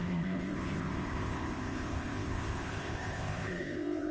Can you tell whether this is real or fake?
fake